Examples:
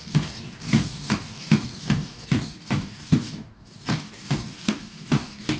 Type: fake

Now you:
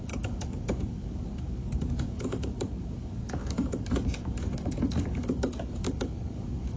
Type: fake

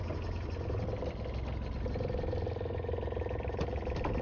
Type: real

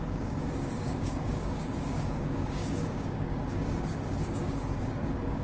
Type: fake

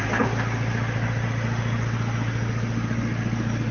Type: real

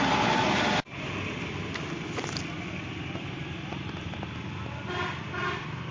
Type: real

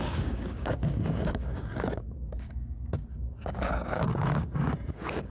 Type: fake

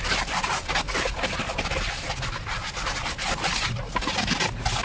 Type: real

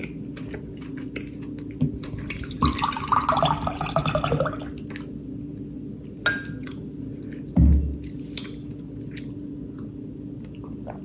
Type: real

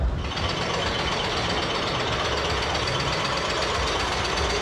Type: real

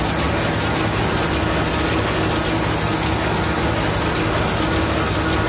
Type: real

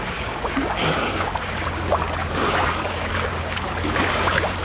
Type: fake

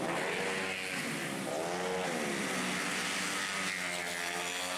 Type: real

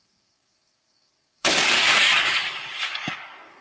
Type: fake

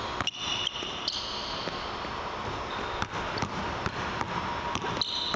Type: real